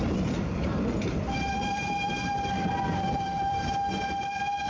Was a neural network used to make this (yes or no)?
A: yes